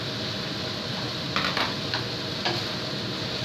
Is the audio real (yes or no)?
yes